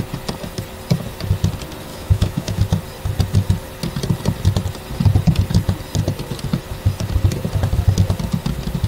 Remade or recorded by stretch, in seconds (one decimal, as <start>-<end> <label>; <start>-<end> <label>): 0.0-1.9 recorded; 1.9-2.6 remade; 2.6-8.9 recorded